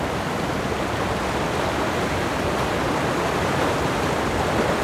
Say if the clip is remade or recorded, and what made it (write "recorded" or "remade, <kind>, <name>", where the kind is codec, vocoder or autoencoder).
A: recorded